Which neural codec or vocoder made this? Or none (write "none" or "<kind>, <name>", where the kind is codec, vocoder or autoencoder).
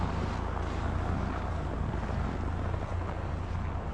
none